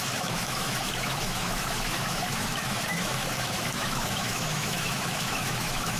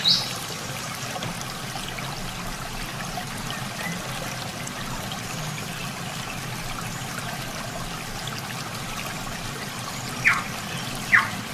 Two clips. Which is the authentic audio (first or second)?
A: second